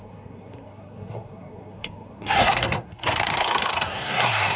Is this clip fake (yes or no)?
yes